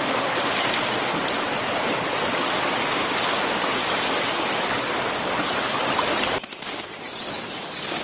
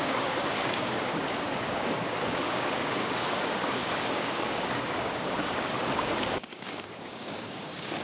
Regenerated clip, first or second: second